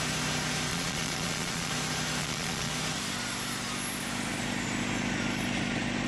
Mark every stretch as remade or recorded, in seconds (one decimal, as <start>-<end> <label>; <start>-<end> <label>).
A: 0.0-0.7 recorded; 0.7-1.7 remade; 1.7-2.2 recorded; 2.2-2.7 remade; 2.7-6.1 recorded